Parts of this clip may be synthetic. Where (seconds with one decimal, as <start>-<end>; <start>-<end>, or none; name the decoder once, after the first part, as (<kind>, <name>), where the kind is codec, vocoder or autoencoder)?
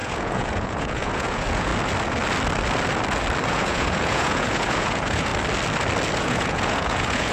0.0-1.7 (vocoder, Vocos); 3.5-5.3; 6.2-7.3